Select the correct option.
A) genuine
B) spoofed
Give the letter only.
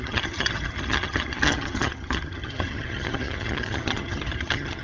B